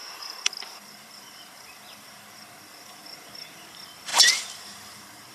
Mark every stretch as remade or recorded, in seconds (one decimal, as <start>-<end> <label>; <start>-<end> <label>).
0.0-5.3 remade